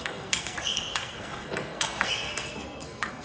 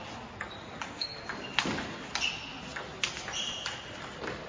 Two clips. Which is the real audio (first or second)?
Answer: second